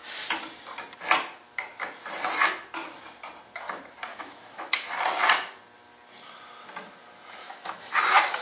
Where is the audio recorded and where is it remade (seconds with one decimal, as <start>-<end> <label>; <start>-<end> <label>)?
0.0-4.1 recorded; 4.1-4.9 remade; 4.9-7.4 recorded; 7.4-8.0 remade; 8.0-8.4 recorded